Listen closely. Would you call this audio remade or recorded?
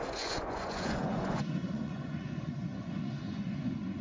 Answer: remade